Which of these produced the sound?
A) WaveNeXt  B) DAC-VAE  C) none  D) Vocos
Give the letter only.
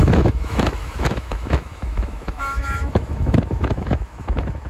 B